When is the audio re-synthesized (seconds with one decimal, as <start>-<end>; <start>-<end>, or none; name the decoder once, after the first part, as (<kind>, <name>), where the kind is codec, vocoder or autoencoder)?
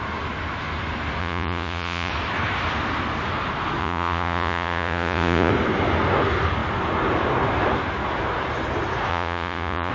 1.2-2.1 (vocoder, Vocos); 3.8-5.5; 9.1-9.9